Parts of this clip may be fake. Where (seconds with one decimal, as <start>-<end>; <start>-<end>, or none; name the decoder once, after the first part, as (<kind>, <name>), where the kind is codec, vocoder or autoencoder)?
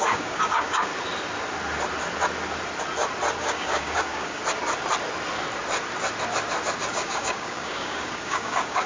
0.0-0.9 (codec, DAC); 3.4-4.4; 6.9-8.9